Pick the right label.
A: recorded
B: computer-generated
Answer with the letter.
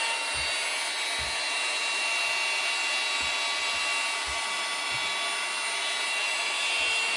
A